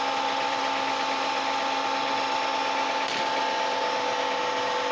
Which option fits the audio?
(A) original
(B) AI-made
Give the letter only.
A